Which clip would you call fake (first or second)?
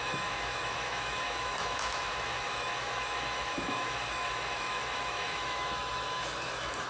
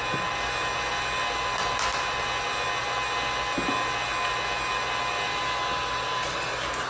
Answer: first